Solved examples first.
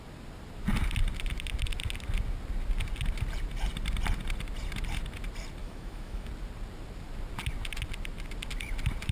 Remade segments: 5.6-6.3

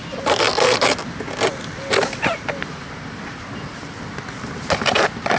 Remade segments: none

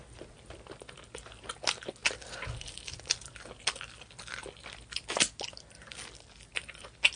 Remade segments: none

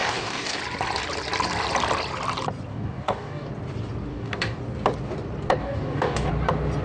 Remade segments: 0.0-0.6; 2.7-3.5; 4.1-4.6; 5.6-6.3

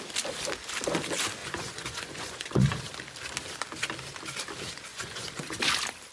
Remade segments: 1.4-2.8; 4.9-5.6

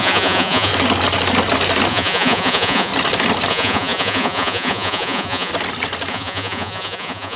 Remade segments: 0.0-0.7; 1.9-2.9; 3.5-5.5; 6.1-7.4

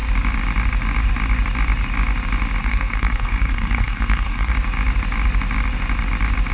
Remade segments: 2.6-4.5